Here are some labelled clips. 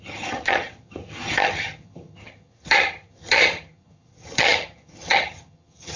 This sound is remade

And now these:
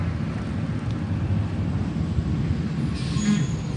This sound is recorded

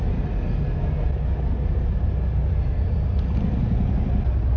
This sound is recorded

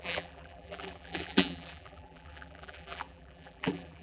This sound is remade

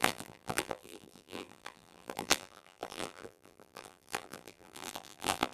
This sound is remade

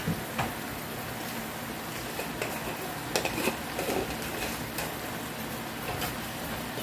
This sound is recorded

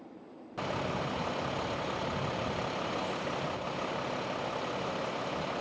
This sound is recorded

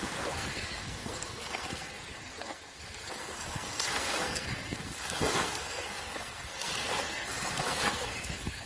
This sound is remade